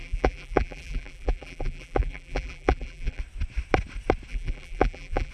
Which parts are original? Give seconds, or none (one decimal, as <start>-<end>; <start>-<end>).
3.2-4.3